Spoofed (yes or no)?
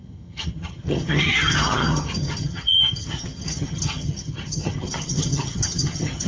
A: yes